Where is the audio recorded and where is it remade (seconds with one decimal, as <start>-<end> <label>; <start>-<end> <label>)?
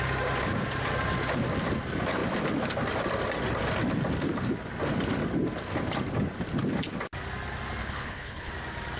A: 0.0-7.8 recorded; 7.8-8.5 remade; 8.5-9.0 recorded